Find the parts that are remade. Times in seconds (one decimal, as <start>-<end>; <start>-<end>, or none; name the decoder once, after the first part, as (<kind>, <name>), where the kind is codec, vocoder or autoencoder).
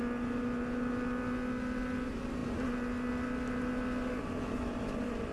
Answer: none